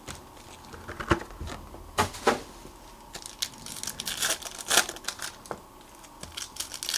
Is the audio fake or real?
real